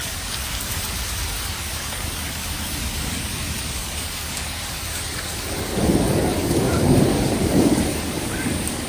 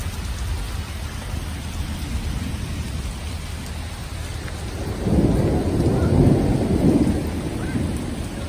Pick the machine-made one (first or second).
first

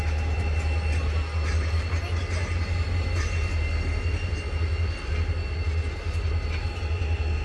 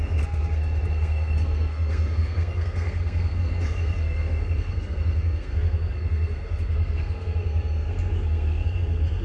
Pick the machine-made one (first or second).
second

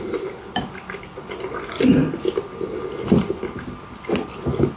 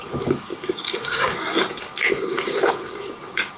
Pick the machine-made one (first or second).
second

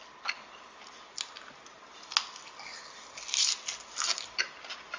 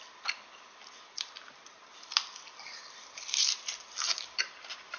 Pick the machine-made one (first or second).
second